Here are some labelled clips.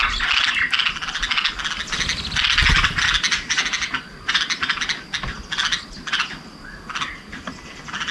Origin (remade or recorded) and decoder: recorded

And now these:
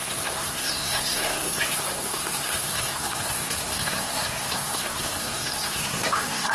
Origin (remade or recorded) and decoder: remade, codec, SNAC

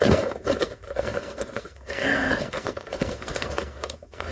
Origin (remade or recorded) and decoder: remade, codec, SNAC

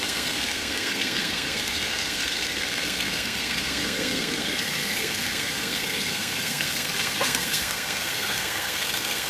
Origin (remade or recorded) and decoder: remade, codec, SNAC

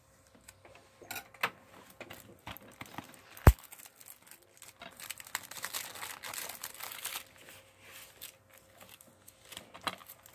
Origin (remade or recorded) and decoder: recorded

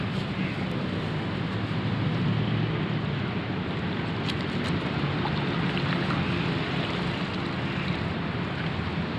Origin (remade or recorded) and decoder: recorded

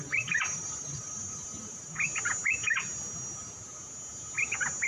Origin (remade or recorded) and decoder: recorded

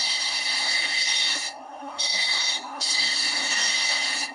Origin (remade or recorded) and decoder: remade, codec, SNAC